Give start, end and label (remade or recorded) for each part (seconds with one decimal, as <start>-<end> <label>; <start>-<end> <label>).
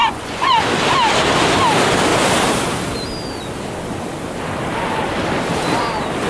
0.0-0.6 remade; 0.6-6.3 recorded